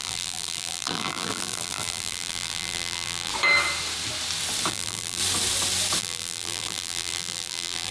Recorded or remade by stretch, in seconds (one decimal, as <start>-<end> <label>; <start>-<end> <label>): 0.0-3.3 remade; 3.3-4.7 recorded; 4.7-5.2 remade; 5.2-6.0 recorded; 6.0-7.9 remade